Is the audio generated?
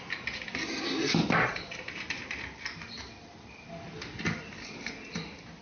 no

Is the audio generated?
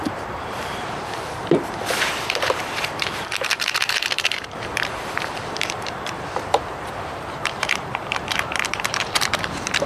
yes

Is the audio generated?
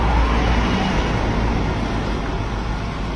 no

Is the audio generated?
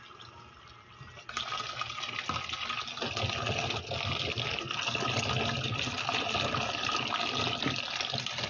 no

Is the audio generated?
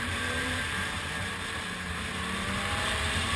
yes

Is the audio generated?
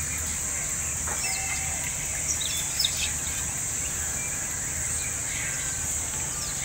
no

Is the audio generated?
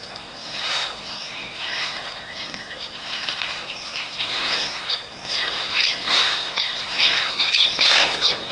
yes